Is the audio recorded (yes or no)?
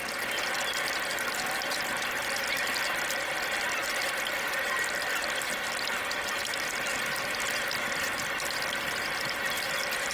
yes